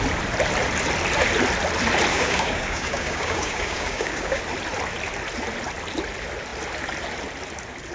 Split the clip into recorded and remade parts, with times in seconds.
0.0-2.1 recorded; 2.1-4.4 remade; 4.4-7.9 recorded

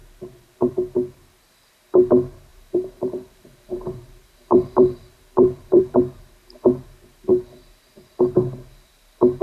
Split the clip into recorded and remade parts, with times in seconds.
0.0-0.7 remade; 0.7-2.5 recorded; 2.5-6.0 remade; 6.0-9.4 recorded

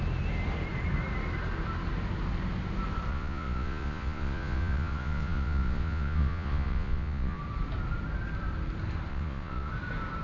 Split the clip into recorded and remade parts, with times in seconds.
0.0-3.1 recorded; 3.1-7.4 remade; 7.4-9.1 recorded; 9.1-9.7 remade; 9.7-10.2 recorded